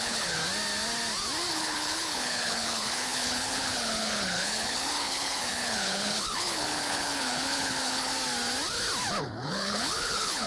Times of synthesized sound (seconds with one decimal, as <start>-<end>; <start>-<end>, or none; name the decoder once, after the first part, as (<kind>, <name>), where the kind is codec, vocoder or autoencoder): 0.0-0.4 (codec, HILCodec); 1.5-8.1; 9.2-10.5